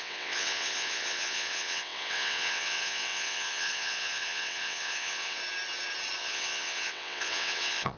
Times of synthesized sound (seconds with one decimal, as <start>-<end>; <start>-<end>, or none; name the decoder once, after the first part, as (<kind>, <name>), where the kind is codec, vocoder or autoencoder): 0.0-5.4 (vocoder, WaveNeXt); 6.2-8.0